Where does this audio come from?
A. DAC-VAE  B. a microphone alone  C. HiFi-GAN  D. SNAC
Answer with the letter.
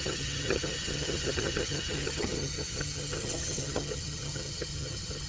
C